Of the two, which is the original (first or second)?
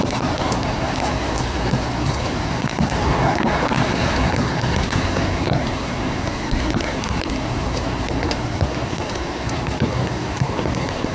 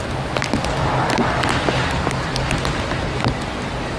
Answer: second